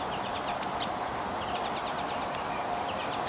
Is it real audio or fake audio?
real